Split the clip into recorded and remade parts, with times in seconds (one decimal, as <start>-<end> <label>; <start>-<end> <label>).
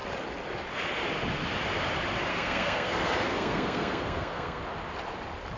0.0-2.3 recorded; 2.3-4.6 remade; 4.6-5.6 recorded